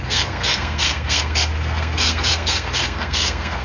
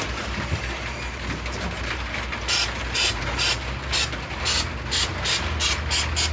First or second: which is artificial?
first